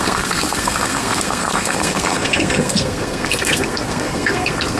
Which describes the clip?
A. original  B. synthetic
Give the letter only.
B